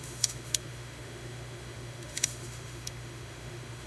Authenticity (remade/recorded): remade